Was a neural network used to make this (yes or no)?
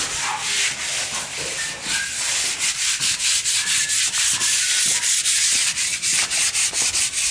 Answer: no